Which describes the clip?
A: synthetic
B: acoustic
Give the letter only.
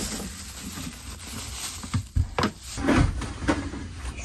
B